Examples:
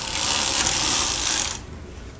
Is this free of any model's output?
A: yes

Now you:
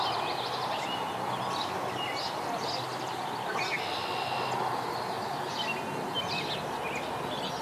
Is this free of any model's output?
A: yes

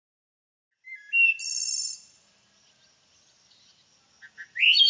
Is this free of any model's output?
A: yes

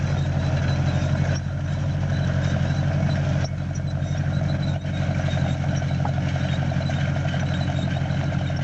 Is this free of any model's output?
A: yes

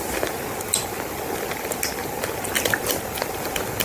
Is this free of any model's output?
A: yes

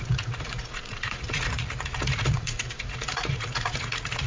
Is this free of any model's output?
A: no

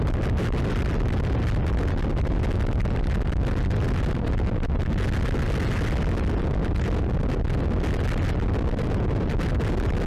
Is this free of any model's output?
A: yes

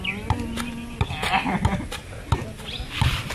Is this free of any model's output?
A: yes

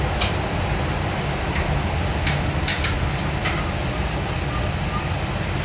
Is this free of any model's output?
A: yes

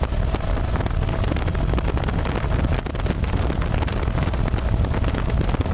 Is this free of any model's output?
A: yes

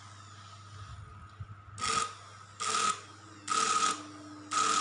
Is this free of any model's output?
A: yes